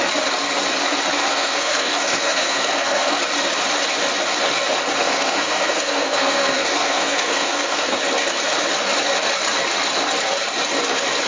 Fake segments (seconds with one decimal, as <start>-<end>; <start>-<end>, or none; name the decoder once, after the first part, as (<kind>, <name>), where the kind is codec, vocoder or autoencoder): 1.3-3.2 (codec, SNAC); 5.0-8.0